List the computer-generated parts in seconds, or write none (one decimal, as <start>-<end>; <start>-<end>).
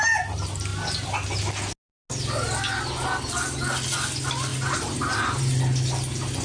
4.5-5.6